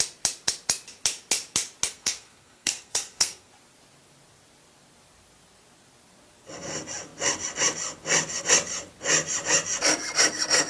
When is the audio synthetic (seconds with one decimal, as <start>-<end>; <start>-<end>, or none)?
1.9-3.5